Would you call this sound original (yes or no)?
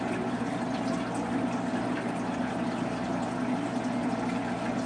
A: yes